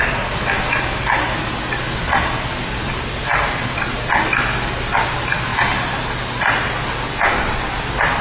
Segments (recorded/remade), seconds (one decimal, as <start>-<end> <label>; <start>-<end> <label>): 0.0-8.2 recorded